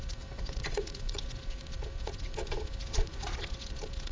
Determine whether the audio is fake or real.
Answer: fake